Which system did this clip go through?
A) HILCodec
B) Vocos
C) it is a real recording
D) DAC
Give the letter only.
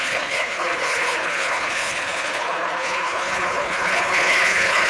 A